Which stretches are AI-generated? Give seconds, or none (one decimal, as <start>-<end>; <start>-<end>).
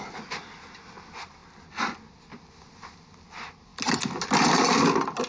none